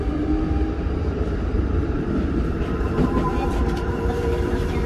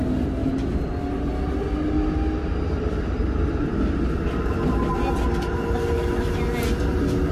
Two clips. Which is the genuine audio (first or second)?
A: second